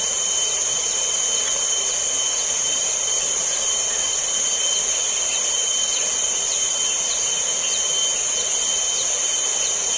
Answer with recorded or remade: recorded